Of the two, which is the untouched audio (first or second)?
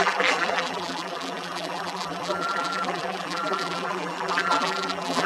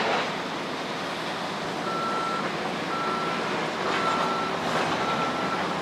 second